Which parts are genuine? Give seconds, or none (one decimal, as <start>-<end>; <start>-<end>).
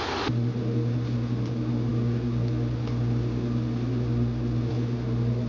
0.0-5.5